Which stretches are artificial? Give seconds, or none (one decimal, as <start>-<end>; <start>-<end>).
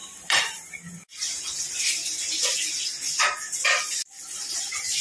0.0-1.6